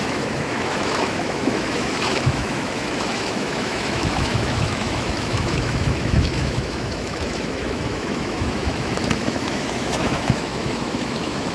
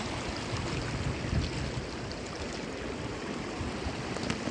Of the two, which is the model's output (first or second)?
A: first